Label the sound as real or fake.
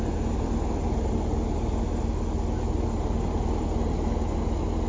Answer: real